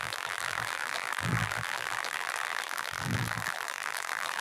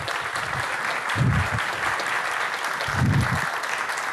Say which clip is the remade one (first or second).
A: first